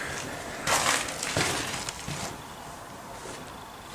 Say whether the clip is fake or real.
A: fake